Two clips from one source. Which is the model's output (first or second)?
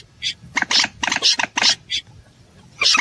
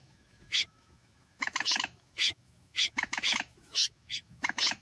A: second